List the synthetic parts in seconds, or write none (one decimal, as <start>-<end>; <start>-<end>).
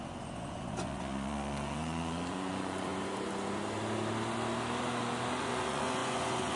0.0-2.9; 5.4-6.6